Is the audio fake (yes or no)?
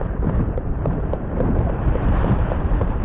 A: yes